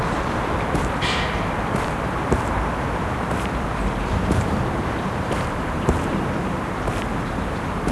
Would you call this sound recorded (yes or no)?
no